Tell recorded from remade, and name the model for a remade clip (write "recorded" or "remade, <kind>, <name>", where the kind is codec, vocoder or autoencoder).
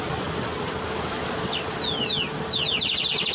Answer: recorded